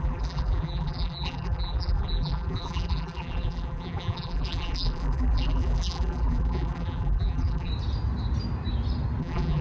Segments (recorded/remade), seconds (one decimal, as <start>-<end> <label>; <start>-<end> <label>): 0.0-7.7 remade; 7.7-9.2 recorded; 9.2-9.6 remade